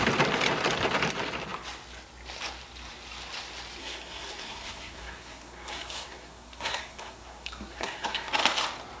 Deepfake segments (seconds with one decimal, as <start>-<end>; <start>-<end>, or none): 3.8-8.3